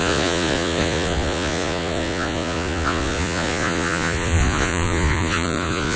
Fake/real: fake